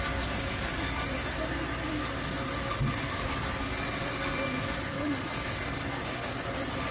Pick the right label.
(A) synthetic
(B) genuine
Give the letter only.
B